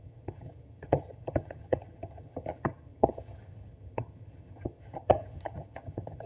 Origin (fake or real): fake